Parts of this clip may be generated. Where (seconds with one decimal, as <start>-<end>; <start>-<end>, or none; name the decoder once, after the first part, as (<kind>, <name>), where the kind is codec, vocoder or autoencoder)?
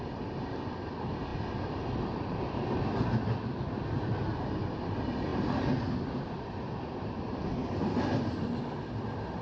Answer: none